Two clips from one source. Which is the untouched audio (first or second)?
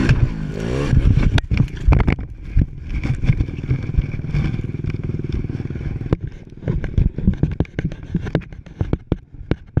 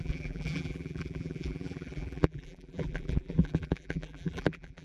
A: first